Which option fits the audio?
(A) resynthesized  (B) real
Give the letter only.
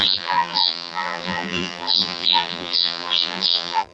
A